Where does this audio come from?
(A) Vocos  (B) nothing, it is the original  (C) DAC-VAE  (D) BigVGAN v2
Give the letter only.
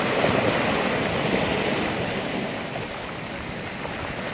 B